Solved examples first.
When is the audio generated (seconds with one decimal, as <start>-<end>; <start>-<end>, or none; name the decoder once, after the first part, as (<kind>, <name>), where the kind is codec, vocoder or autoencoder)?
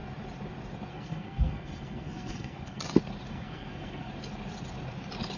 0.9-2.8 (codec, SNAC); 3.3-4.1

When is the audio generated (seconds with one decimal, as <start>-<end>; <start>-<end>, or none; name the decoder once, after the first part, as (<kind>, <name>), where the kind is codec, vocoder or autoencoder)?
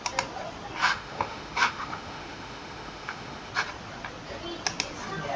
0.8-3.5 (autoencoder, DAC-VAE)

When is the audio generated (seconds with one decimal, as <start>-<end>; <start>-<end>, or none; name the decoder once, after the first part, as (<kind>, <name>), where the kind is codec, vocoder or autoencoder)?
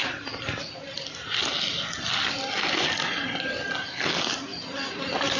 none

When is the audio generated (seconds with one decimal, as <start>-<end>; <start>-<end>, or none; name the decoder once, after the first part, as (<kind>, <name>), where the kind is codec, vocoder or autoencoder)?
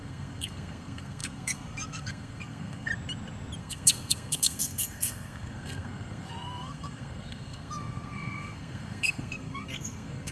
0.0-2.9 (codec, SNAC); 3.6-10.3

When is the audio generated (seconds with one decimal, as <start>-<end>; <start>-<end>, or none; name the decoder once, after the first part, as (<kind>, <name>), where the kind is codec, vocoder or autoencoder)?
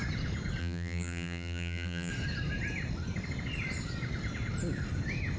0.6-2.1 (vocoder, BigVGAN v2)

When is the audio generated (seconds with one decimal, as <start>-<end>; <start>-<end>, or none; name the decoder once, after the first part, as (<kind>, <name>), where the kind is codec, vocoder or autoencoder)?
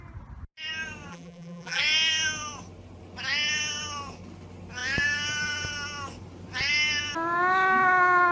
1.1-1.8 (vocoder, BigVGAN v2)